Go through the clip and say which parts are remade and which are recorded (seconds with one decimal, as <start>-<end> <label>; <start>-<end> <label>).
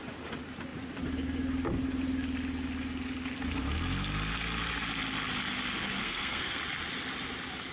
0.0-6.0 recorded; 6.0-6.6 remade; 6.6-7.7 recorded